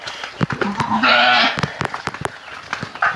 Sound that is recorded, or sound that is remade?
recorded